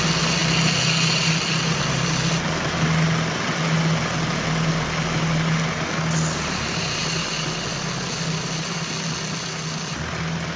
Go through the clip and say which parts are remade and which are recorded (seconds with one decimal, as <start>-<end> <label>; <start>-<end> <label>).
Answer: 0.0-10.6 recorded